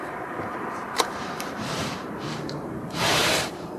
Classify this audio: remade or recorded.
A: remade